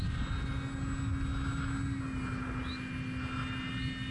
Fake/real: real